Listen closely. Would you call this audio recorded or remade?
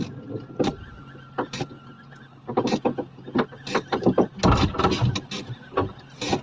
recorded